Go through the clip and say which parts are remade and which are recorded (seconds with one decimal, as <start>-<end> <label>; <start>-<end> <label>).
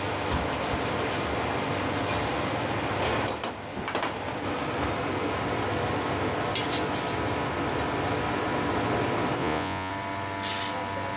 0.0-9.4 recorded; 9.4-9.9 remade; 9.9-11.2 recorded